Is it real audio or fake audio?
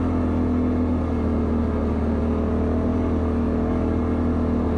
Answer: real